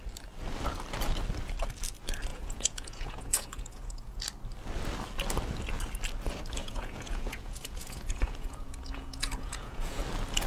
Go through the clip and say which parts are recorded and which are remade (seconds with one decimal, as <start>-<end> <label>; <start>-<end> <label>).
0.0-2.3 recorded; 2.3-4.2 remade; 4.2-6.6 recorded; 6.6-10.0 remade; 10.0-10.5 recorded